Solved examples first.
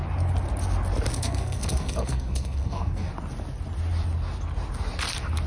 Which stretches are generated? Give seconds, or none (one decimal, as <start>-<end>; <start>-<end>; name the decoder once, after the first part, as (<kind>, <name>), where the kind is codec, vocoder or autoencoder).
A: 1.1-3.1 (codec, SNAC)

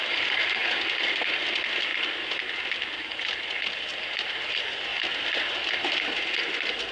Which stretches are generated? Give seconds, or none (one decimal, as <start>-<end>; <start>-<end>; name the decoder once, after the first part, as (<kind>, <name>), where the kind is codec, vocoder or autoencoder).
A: none

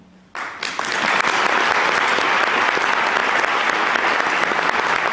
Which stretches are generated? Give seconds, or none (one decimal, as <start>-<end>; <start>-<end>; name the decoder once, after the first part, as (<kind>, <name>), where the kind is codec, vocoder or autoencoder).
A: none

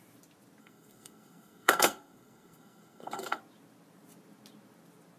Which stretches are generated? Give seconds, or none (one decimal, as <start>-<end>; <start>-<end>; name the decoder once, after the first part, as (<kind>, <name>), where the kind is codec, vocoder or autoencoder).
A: 0.6-3.4 (codec, SNAC)